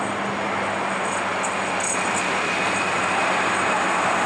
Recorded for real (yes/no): yes